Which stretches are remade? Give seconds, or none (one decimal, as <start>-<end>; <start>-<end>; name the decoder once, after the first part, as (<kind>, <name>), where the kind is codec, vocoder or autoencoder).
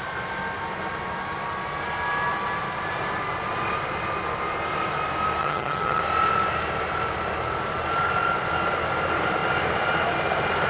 5.4-6.0 (vocoder, HiFi-GAN)